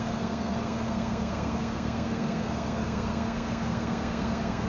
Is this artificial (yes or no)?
yes